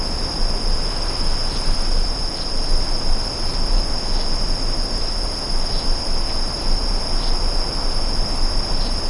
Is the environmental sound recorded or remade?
recorded